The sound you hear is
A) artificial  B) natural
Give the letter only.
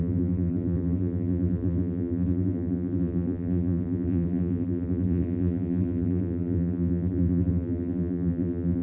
A